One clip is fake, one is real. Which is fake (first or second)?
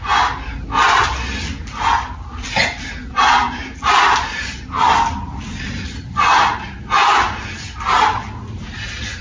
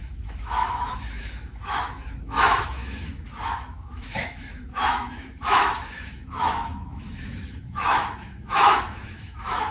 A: second